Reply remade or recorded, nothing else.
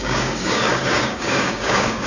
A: remade